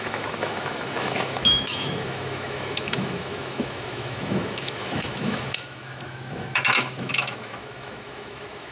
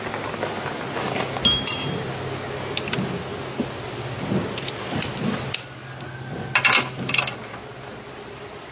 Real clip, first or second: second